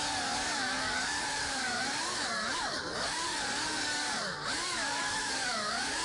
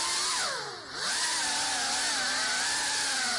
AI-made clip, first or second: first